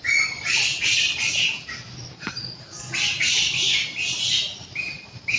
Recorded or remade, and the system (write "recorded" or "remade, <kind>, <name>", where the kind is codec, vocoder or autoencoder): recorded